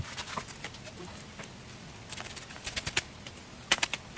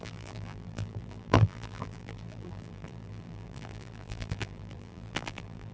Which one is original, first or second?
first